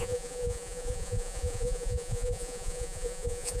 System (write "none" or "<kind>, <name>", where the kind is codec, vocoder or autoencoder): vocoder, Vocos